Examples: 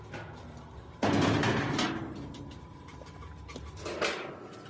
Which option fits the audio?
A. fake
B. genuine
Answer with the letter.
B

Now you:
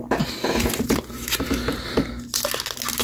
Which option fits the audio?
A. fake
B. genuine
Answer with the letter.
B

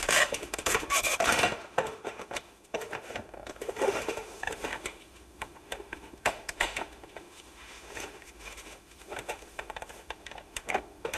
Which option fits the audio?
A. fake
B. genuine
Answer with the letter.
A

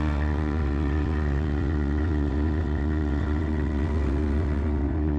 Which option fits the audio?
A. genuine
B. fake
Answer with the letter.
B